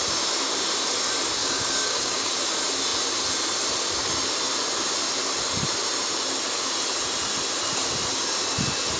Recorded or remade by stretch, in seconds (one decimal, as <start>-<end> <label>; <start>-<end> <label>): 0.0-1.4 recorded; 1.4-2.3 remade; 2.3-9.0 recorded